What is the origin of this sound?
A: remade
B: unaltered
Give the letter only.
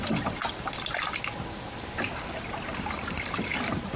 B